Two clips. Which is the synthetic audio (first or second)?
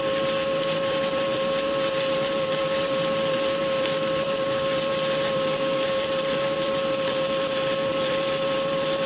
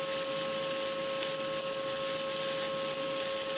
first